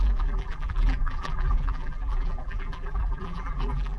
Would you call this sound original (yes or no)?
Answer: no